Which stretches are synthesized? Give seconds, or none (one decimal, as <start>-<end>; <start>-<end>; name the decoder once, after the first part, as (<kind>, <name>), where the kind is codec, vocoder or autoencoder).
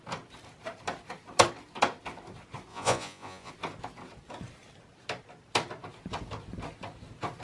2.7-3.5 (vocoder, Vocos)